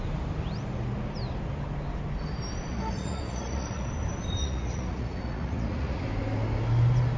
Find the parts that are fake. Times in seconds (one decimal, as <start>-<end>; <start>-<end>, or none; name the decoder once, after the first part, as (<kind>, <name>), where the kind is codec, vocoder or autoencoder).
2.7-3.9 (vocoder, Vocos); 4.4-6.0